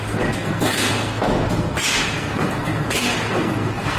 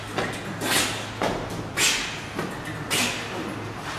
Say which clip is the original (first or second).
second